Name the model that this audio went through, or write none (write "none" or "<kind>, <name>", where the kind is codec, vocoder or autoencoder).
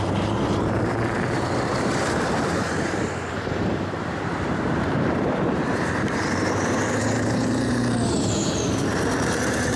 vocoder, BigVGAN v2